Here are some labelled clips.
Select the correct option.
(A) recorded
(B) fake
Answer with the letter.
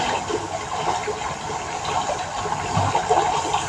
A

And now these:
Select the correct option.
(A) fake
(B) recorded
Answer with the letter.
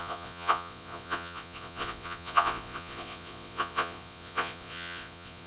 A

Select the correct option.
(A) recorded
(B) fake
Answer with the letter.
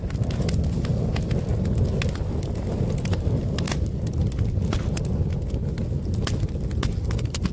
A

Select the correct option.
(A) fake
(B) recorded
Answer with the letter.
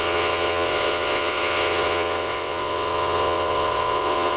A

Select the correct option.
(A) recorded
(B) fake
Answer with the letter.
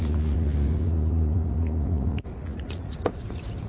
B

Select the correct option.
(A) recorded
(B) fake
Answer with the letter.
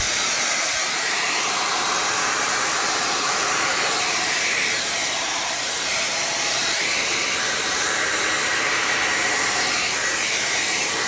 B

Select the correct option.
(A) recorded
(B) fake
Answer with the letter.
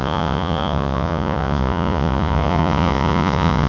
B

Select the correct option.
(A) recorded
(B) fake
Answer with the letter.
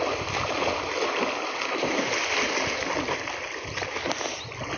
A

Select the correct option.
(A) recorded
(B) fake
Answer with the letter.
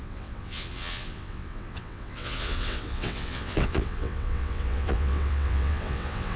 B